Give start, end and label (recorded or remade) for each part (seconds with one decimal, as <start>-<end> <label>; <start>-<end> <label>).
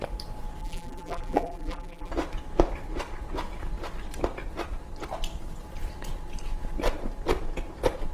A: 0.0-0.6 recorded; 0.6-2.1 remade; 2.1-8.1 recorded